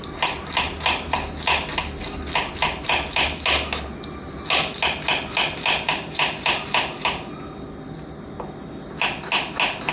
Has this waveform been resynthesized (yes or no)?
no